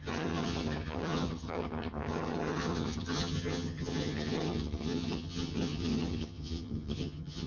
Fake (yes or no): yes